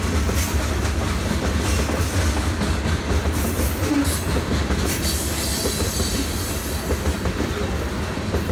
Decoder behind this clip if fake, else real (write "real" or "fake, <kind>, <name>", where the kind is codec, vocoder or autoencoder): real